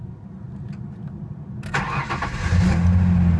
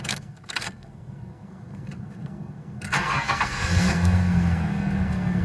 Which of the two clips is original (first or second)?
first